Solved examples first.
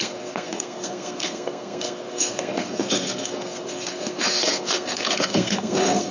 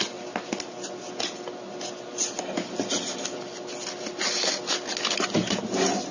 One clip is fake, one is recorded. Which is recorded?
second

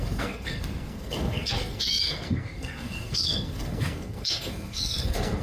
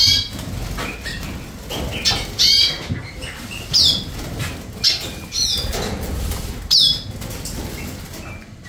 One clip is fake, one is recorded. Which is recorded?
second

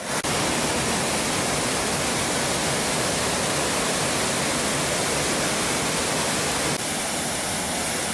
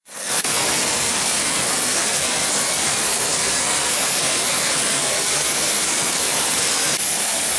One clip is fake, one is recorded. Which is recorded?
first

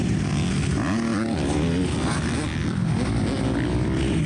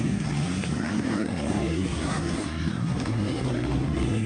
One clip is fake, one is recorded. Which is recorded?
first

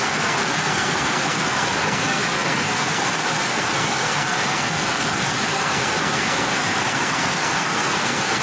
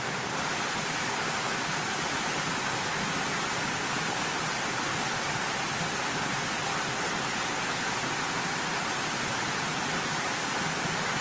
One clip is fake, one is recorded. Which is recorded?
second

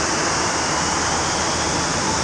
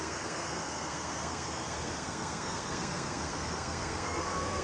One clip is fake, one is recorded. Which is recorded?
first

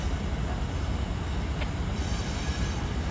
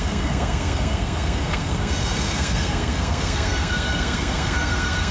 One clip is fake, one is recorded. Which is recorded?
first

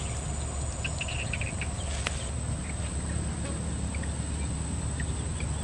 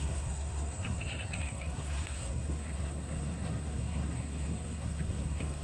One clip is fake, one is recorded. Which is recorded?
first